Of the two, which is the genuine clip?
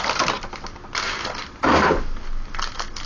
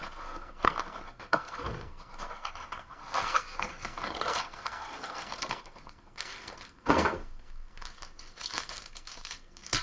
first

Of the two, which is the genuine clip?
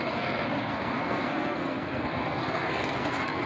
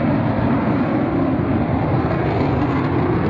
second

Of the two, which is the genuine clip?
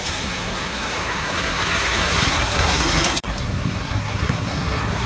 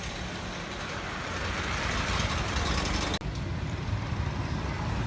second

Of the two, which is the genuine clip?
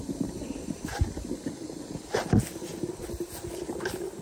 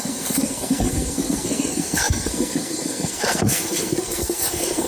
first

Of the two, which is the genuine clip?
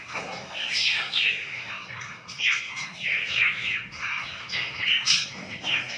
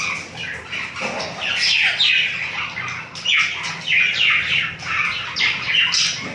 second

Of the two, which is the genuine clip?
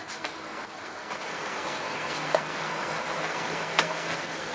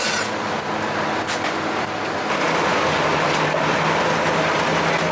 second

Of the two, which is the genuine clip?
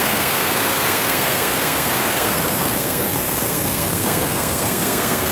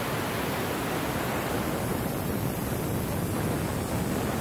second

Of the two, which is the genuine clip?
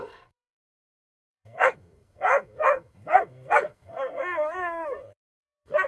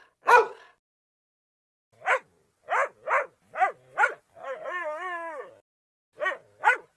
second